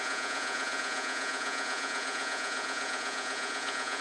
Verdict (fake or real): fake